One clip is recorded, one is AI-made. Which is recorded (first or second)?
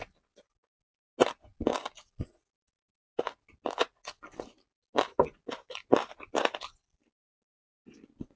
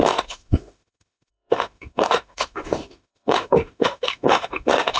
first